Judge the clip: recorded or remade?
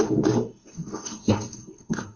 remade